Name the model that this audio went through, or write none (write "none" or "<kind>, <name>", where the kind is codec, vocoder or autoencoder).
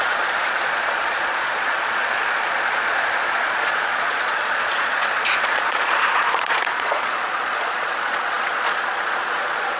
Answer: vocoder, Vocos